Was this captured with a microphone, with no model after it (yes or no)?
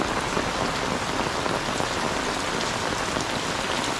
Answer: yes